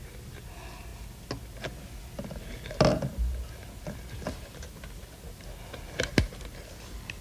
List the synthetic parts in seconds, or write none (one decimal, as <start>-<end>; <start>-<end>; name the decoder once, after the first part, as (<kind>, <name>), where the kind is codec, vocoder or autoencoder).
none